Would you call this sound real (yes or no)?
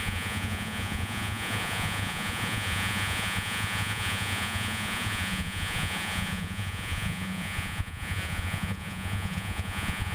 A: no